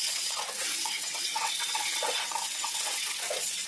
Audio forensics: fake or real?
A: fake